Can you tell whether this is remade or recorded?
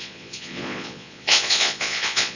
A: remade